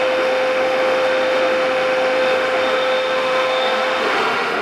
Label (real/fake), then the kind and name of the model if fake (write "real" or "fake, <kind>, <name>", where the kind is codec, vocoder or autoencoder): fake, autoencoder, DAC-VAE